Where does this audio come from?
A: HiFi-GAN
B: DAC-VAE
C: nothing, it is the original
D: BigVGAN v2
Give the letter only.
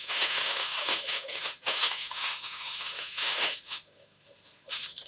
B